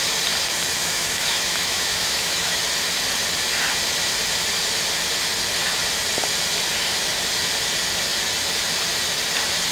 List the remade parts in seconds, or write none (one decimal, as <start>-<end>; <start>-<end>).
0.8-2.6